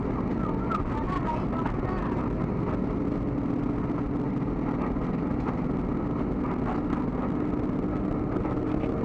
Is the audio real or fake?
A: real